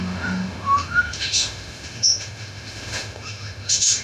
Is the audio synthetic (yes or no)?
yes